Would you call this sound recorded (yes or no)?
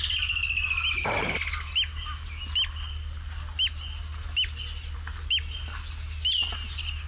yes